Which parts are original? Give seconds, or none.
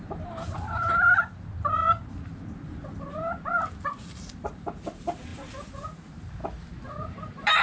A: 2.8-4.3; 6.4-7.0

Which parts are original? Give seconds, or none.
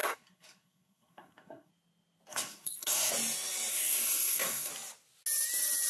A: 1.7-2.3; 3.1-3.7; 4.7-5.9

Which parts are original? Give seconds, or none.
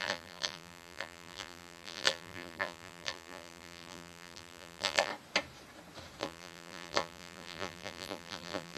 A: 5.1-6.2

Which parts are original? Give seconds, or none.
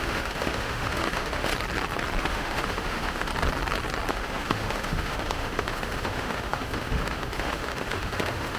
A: 1.5-2.2; 3.3-4.1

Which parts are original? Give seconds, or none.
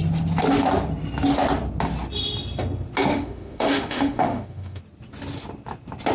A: 0.0-3.1; 4.8-6.1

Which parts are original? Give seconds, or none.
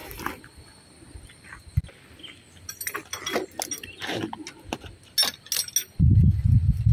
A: 0.0-6.9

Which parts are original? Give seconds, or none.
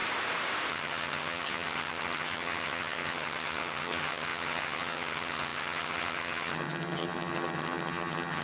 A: 0.0-0.7